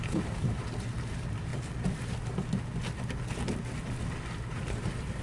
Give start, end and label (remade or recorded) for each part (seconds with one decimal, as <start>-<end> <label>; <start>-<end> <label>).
0.0-1.5 remade; 1.5-4.6 recorded; 4.6-5.2 remade

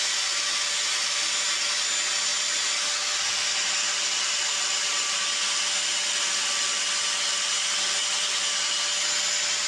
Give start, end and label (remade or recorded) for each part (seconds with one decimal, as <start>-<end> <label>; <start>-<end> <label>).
0.0-2.3 recorded; 2.3-5.3 remade; 5.3-9.7 recorded

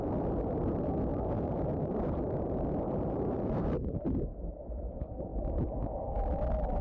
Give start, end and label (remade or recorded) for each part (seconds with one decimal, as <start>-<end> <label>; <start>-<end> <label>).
0.0-1.1 recorded; 1.1-4.2 remade; 4.2-6.8 recorded

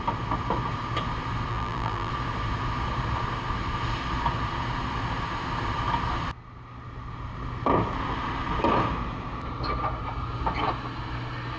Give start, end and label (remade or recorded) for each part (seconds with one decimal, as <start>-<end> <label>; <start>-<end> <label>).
0.0-1.5 recorded; 1.5-2.1 remade; 2.1-11.6 recorded

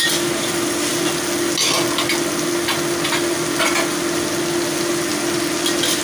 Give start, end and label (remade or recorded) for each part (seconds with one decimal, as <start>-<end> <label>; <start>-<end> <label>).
0.0-6.0 recorded

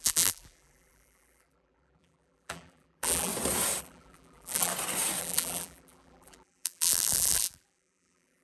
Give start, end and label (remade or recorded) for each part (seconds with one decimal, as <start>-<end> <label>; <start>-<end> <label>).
0.0-3.3 remade; 3.3-3.8 recorded; 3.8-4.7 remade; 4.7-5.2 recorded; 5.2-8.4 remade